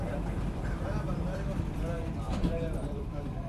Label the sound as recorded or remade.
remade